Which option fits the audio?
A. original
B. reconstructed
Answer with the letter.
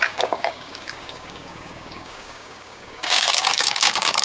B